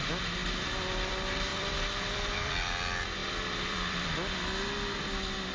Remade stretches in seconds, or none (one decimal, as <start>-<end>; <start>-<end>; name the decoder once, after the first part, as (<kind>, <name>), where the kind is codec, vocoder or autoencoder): 1.5-2.5 (vocoder, BigVGAN v2); 3.2-4.1